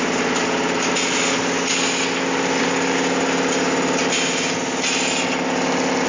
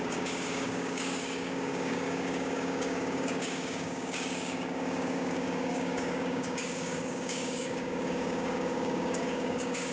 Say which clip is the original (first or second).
first